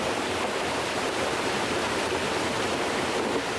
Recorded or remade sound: recorded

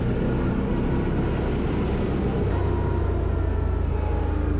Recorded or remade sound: recorded